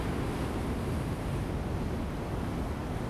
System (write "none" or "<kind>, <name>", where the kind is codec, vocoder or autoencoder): none